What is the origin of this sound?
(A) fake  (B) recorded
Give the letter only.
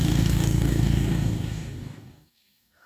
A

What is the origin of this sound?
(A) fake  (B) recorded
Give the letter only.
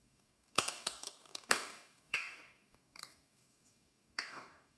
A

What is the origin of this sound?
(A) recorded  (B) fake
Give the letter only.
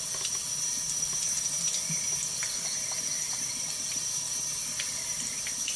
A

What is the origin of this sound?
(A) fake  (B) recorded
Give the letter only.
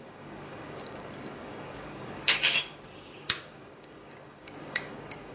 A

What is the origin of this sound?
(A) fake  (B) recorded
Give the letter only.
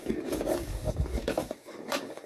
A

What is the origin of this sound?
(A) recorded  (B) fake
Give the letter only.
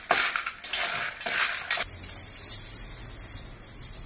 A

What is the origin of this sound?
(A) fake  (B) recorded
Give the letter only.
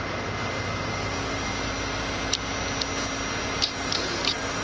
B